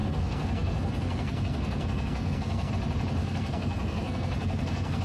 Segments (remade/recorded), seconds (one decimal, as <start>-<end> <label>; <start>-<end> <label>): 0.0-2.7 remade; 2.7-3.2 recorded; 3.2-5.0 remade